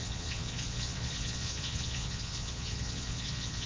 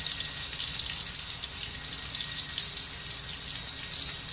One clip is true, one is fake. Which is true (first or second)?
second